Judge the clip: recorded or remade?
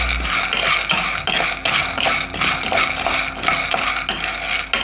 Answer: recorded